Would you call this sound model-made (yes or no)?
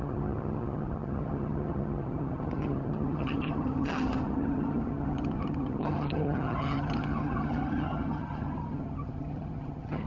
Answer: yes